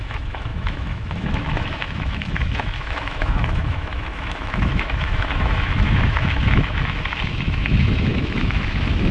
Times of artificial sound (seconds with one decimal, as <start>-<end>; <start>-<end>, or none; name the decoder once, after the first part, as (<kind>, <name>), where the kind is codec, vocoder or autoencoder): 0.0-9.1 (autoencoder, DAC-VAE)